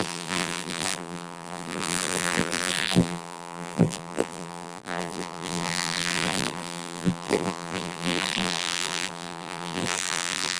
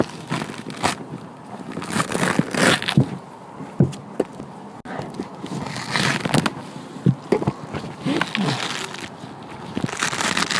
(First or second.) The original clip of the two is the second